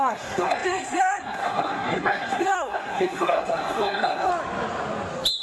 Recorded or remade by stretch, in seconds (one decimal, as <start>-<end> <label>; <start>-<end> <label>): 0.0-4.3 remade; 4.3-5.4 recorded